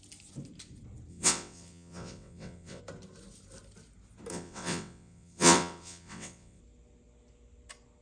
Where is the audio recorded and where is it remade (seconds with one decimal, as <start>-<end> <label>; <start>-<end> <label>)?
0.0-1.1 recorded; 1.1-2.8 remade; 2.8-4.3 recorded; 4.3-6.6 remade; 6.6-8.0 recorded